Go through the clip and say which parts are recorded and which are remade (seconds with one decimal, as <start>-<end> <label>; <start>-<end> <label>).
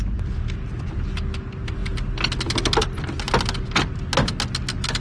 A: 0.0-5.0 recorded